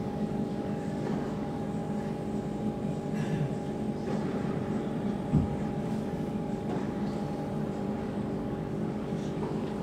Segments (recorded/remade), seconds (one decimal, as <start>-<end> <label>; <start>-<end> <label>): 0.0-1.8 remade; 1.8-5.7 recorded; 5.7-7.2 remade; 7.2-8.0 recorded; 8.0-9.8 remade